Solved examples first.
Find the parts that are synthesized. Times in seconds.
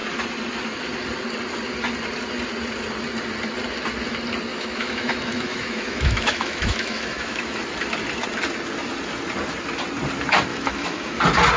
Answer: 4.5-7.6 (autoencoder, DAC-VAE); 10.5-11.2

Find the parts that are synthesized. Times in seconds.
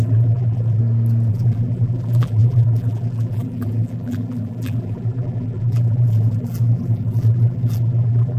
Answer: 0.0-0.8 (vocoder, BigVGAN v2); 1.3-8.4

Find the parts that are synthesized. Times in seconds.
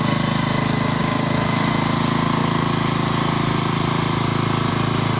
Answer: 1.0-1.7 (codec, DAC)